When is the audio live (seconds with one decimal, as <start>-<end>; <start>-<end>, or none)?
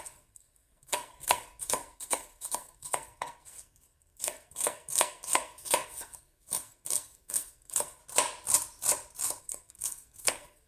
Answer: 8.0-9.4